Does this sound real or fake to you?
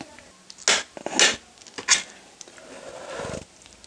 real